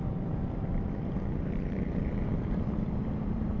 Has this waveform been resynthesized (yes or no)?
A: yes